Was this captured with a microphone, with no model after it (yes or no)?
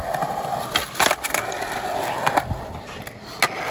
yes